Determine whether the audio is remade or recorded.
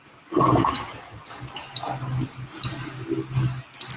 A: recorded